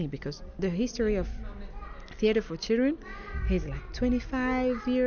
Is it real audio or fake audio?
real